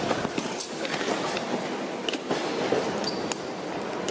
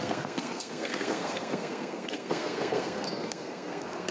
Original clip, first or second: first